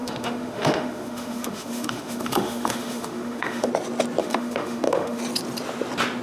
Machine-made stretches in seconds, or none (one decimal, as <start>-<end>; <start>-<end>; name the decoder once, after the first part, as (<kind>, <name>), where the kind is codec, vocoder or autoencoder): 0.0-3.7 (autoencoder, DAC-VAE); 4.2-5.2